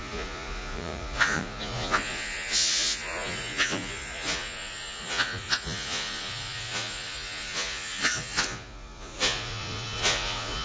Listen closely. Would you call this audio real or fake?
fake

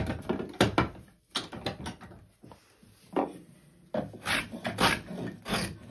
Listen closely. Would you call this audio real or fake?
real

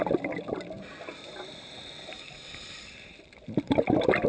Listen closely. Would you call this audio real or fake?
real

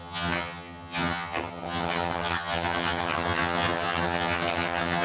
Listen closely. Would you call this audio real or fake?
fake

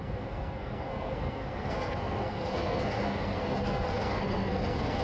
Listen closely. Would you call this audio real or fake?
fake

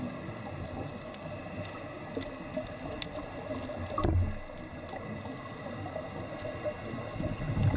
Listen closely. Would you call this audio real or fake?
real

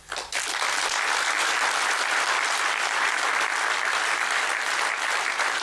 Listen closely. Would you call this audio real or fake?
real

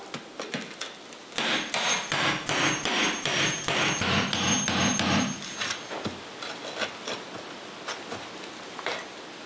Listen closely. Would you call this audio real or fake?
real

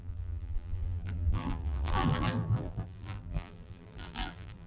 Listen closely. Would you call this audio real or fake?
fake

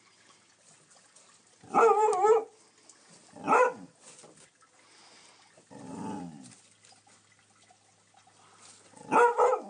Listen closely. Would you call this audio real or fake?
real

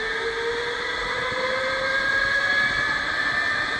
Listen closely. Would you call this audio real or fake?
real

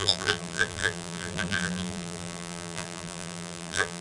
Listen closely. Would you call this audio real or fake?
fake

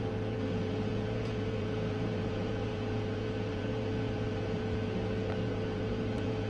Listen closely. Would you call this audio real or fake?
fake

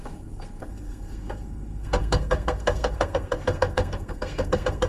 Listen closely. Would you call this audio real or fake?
fake